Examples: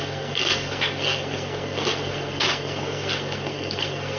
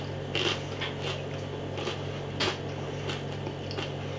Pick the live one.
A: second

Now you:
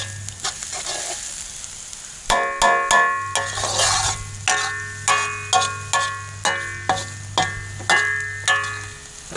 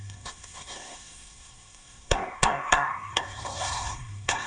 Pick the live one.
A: first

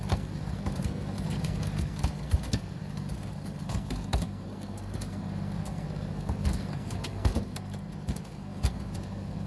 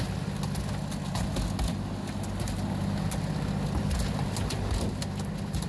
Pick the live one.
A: second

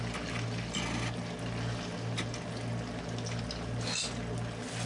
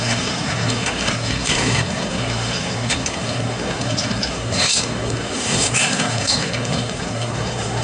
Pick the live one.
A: first